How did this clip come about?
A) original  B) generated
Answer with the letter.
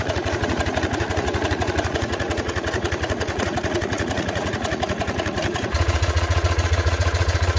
B